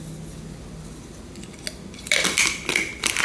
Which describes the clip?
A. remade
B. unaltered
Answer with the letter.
B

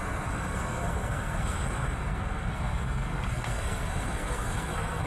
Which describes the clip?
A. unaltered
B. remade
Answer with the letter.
B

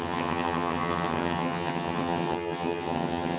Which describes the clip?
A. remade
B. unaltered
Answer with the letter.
A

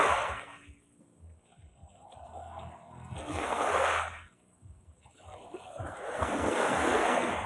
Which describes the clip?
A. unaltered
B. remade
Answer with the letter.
B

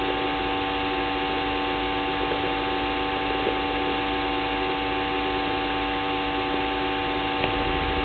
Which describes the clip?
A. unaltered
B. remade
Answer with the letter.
A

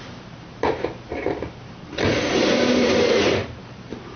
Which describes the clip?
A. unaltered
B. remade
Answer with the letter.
B